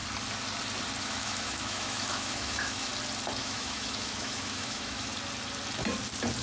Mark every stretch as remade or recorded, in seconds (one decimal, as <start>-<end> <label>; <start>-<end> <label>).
0.0-1.0 recorded; 1.0-2.9 remade; 2.9-3.4 recorded; 3.4-5.1 remade; 5.1-6.4 recorded

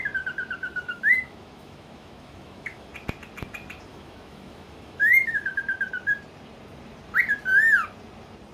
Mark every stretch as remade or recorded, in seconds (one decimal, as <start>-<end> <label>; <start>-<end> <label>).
0.0-0.6 recorded; 0.6-2.9 remade; 2.9-3.9 recorded; 3.9-5.6 remade; 5.6-8.5 recorded

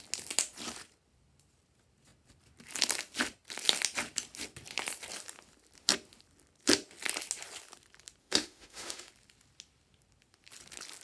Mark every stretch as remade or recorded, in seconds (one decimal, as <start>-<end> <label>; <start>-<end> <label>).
0.0-8.2 recorded; 8.2-9.1 remade; 9.1-11.0 recorded